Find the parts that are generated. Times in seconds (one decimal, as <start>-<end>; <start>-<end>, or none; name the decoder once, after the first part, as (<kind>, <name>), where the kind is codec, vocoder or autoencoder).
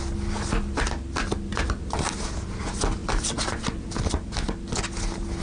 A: none